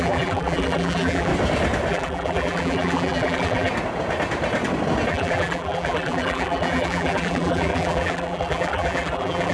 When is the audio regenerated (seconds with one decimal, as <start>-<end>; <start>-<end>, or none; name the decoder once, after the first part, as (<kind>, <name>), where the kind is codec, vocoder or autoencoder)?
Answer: 0.0-1.3 (vocoder, BigVGAN v2); 1.9-3.7; 5.1-9.5